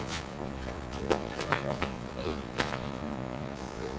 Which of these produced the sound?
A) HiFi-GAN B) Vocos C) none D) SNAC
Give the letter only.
B